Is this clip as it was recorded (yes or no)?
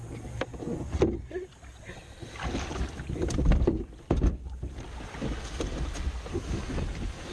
yes